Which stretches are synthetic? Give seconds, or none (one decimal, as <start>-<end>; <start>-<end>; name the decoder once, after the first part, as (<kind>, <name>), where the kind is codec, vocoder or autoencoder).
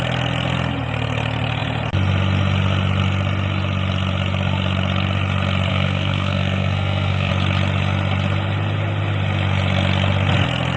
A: 5.7-7.3 (codec, SNAC)